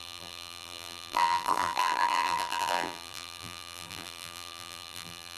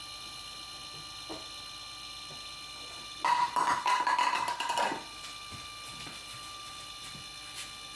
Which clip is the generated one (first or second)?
first